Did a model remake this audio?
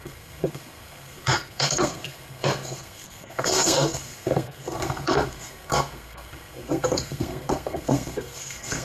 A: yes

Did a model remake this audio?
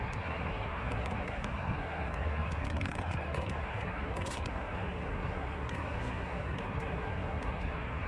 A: yes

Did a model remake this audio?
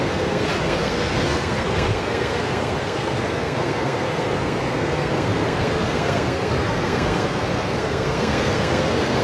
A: yes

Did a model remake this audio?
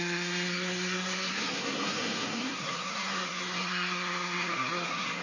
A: yes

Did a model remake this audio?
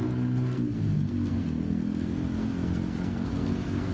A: yes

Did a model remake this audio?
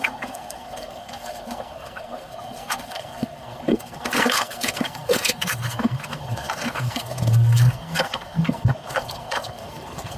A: yes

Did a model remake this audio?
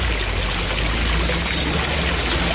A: no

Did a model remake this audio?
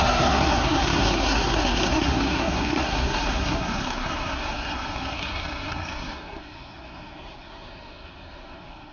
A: yes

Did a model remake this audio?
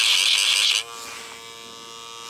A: no